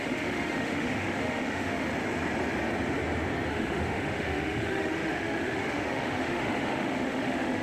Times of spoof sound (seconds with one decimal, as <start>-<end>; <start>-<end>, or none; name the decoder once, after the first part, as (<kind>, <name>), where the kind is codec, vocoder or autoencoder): 0.0-1.9 (autoencoder, DAC-VAE); 3.5-7.6